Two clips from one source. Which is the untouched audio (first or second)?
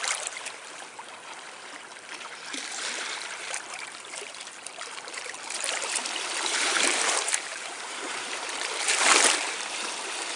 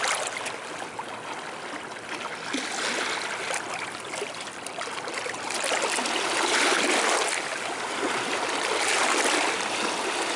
second